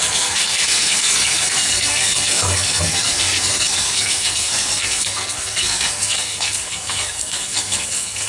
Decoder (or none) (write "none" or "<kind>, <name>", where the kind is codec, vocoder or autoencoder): codec, SNAC